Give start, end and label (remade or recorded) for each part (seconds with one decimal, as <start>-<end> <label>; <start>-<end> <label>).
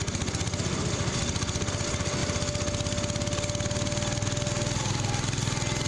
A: 0.0-5.9 recorded